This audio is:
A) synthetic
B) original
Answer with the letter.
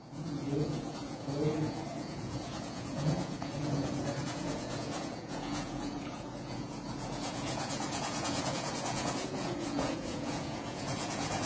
A